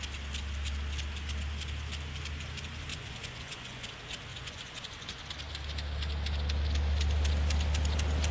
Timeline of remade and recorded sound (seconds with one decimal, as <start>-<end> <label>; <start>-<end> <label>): 0.0-2.9 recorded; 2.9-3.9 remade; 3.9-4.3 recorded; 4.3-5.2 remade; 5.2-8.3 recorded